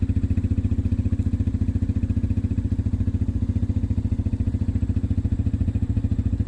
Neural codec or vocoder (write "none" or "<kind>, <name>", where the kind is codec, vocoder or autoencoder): none